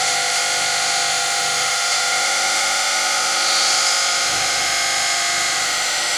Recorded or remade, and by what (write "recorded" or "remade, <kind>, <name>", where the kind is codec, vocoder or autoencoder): remade, autoencoder, DAC-VAE